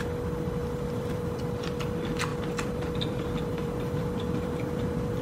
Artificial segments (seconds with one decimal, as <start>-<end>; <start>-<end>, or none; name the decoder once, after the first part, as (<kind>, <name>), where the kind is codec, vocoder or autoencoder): 0.6-1.4 (vocoder, BigVGAN v2); 2.3-5.2